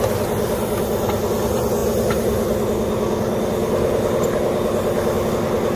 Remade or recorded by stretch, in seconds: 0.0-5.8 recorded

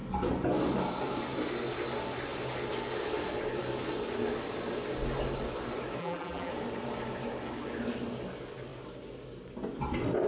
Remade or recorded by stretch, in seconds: 0.0-6.0 recorded; 6.0-6.5 remade; 6.5-10.3 recorded

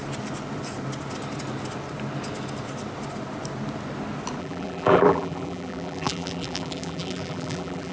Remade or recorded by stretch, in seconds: 0.0-4.4 recorded; 4.4-7.9 remade

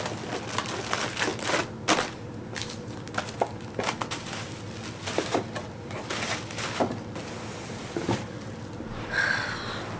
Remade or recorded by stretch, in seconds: 0.0-10.0 recorded

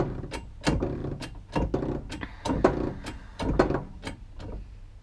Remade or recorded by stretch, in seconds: 0.0-5.0 recorded

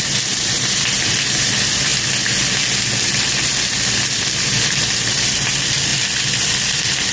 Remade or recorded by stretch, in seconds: 0.0-1.9 remade; 1.9-4.8 recorded; 4.8-5.9 remade; 5.9-6.6 recorded; 6.6-7.1 remade

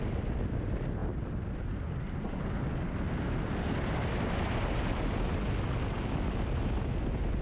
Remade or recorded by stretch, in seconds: 0.0-7.4 recorded

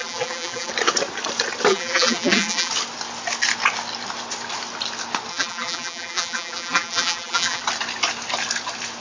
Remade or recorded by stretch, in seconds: 0.0-0.7 remade; 0.7-1.7 recorded; 1.7-2.7 remade; 2.7-5.3 recorded; 5.3-7.6 remade; 7.6-9.0 recorded